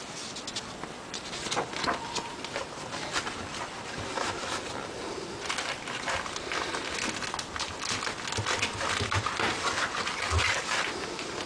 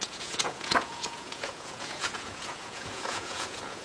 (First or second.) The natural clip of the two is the first